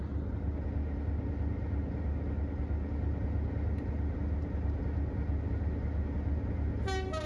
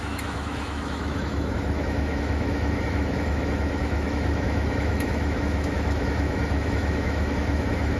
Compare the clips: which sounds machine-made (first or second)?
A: second